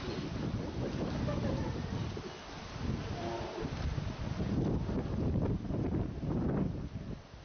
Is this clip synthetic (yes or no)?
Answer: no